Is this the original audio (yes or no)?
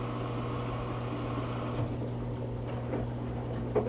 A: yes